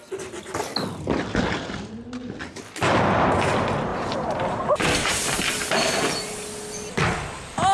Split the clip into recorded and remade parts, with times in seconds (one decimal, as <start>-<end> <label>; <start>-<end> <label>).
0.0-3.9 recorded; 3.9-5.7 remade; 5.7-7.7 recorded